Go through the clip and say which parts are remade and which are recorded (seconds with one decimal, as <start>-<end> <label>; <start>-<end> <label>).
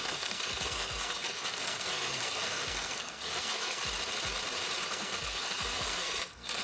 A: 0.0-3.8 remade; 3.8-4.9 recorded; 4.9-6.6 remade